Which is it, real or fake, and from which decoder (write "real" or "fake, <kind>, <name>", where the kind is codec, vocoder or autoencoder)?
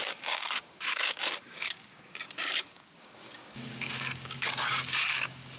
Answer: fake, codec, DAC